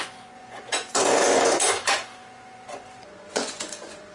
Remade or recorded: remade